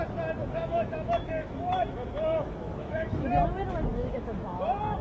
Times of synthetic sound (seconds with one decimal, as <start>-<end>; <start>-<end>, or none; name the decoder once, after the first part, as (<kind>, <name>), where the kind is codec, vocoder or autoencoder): 0.4-3.3 (autoencoder, DAC-VAE); 3.9-4.6

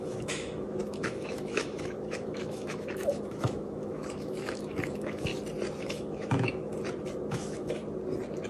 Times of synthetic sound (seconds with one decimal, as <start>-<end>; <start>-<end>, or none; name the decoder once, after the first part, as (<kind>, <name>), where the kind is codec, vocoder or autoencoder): 0.0-5.3 (autoencoder, DAC-VAE); 5.8-6.7; 7.3-7.8

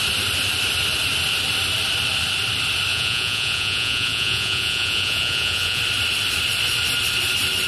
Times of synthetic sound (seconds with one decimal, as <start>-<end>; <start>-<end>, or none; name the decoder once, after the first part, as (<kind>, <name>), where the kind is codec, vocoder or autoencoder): 2.9-5.8 (vocoder, Vocos)

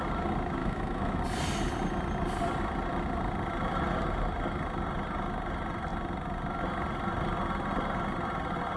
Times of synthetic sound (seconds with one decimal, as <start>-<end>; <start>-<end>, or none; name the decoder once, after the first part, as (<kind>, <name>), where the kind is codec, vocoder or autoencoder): 0.6-1.2 (autoencoder, DAC-VAE)